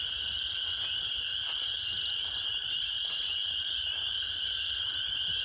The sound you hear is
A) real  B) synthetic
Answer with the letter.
A